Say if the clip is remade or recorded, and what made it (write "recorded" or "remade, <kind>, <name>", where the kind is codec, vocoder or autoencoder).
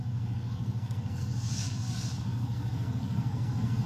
remade, codec, SNAC